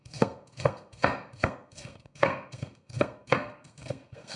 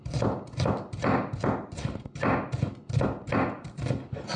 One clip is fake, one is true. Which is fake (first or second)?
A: first